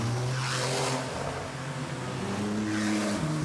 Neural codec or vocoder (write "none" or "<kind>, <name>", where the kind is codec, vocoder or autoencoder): none